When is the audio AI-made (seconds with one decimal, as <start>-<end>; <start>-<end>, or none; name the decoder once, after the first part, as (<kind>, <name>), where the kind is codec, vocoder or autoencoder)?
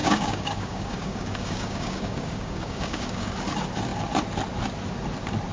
0.0-3.3 (codec, DAC)